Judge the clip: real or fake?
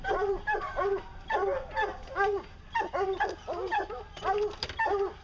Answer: real